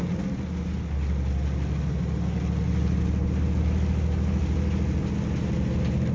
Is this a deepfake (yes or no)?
no